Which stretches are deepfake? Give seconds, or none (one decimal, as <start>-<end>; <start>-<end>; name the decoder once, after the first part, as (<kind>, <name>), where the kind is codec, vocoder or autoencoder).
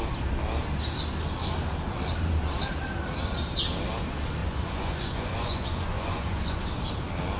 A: 4.4-6.6 (vocoder, Vocos)